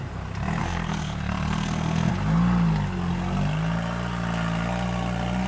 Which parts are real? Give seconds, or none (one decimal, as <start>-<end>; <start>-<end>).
0.0-0.6; 2.1-5.5